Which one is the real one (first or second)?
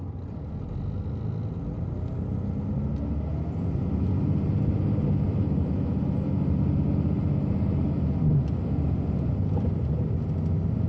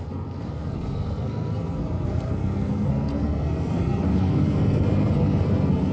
first